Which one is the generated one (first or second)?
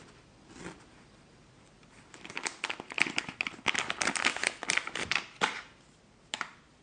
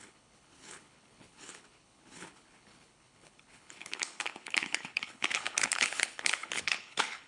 second